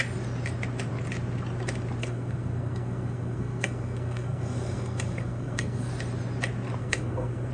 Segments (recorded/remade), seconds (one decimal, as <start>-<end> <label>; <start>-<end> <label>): 0.0-2.0 recorded; 2.0-5.9 remade; 5.9-6.8 recorded; 6.8-7.5 remade